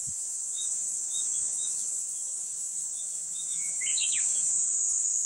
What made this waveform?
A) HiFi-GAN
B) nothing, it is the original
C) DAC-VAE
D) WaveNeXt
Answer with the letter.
C